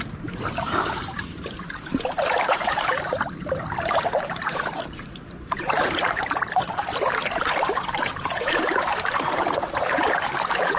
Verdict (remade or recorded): remade